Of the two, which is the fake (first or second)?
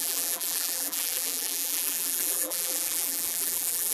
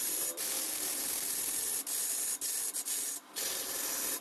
first